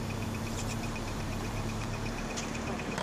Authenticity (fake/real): fake